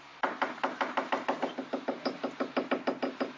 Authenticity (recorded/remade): recorded